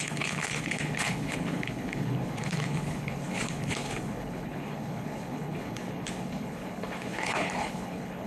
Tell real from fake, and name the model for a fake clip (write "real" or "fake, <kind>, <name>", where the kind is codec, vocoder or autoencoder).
fake, codec, HILCodec